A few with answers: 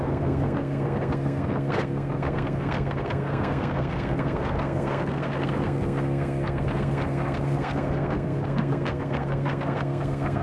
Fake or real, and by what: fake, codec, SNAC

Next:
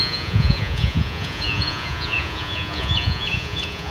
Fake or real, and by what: fake, vocoder, Vocos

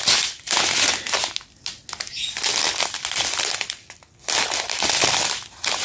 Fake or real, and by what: real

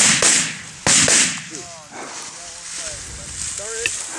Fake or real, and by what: real